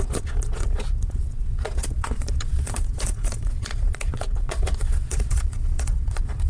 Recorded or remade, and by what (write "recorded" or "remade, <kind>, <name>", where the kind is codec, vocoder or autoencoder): remade, vocoder, Vocos